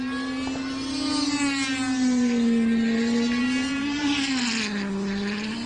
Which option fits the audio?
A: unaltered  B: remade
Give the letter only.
A